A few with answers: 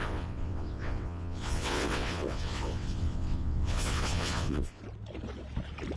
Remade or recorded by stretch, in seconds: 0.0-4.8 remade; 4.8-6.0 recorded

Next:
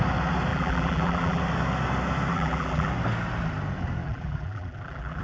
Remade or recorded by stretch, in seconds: 0.0-0.5 recorded; 0.5-1.4 remade; 1.4-2.3 recorded; 2.3-2.9 remade; 2.9-4.0 recorded; 4.0-5.2 remade

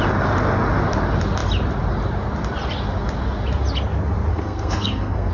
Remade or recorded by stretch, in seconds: 0.0-4.3 recorded; 4.3-5.3 remade

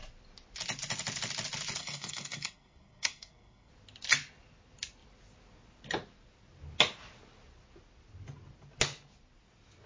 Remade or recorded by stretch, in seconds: 0.0-1.8 recorded; 1.8-3.7 remade; 3.7-9.9 recorded

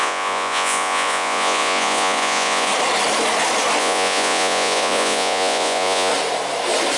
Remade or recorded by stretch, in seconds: 0.0-2.7 remade; 2.7-3.8 recorded; 3.8-6.1 remade; 6.1-7.0 recorded

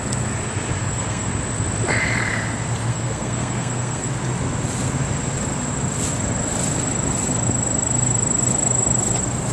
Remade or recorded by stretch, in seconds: 0.0-0.8 recorded; 0.8-1.3 remade; 1.3-2.9 recorded; 2.9-4.1 remade; 4.1-9.5 recorded

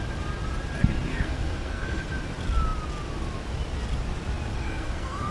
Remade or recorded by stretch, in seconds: 0.0-1.1 recorded; 1.1-2.1 remade; 2.1-4.5 recorded; 4.5-5.3 remade